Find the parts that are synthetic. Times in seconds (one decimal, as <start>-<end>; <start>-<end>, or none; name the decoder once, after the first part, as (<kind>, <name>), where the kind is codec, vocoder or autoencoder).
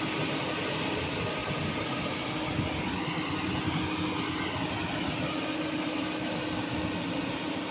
1.4-2.3 (vocoder, BigVGAN v2)